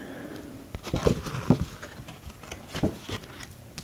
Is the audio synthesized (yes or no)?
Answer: no